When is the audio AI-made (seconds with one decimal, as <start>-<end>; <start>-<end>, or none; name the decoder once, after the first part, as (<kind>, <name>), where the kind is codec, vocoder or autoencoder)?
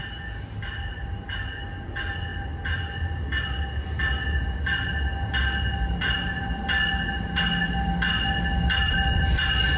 none